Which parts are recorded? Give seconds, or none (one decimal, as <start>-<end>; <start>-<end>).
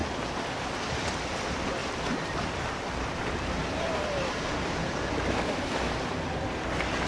0.6-1.8; 5.1-7.1